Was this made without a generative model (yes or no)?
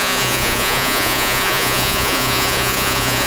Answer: no